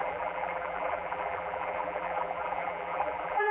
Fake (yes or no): yes